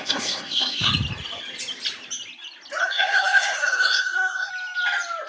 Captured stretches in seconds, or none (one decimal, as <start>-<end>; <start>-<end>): 0.9-2.8; 4.5-5.3